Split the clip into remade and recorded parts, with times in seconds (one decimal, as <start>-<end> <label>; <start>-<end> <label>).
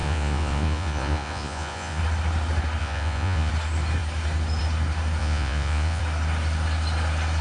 0.0-2.0 remade; 2.0-2.8 recorded; 2.8-3.5 remade; 3.5-5.2 recorded; 5.2-6.0 remade; 6.0-7.4 recorded